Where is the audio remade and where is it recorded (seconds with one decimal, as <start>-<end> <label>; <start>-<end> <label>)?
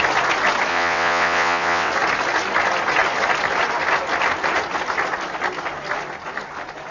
0.0-0.7 recorded; 0.7-1.9 remade; 1.9-6.9 recorded